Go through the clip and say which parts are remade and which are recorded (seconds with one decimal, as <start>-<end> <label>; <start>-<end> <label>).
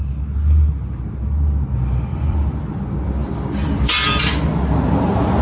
0.0-2.1 recorded; 2.1-2.8 remade; 2.8-3.2 recorded; 3.2-4.2 remade; 4.2-5.4 recorded